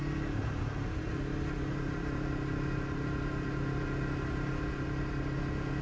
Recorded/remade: recorded